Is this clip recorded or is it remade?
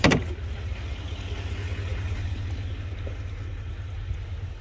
recorded